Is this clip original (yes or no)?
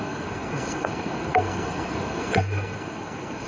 no